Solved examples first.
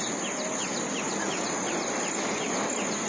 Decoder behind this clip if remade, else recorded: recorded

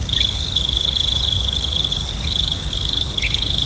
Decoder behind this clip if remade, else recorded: remade, codec, HILCodec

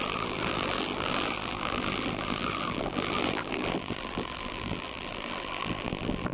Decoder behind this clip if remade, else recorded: remade, vocoder, BigVGAN v2